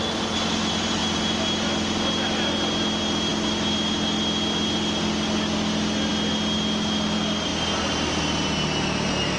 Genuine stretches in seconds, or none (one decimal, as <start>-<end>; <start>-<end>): 0.0-9.4